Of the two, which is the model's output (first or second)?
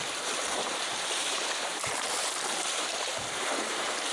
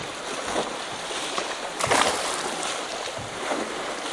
first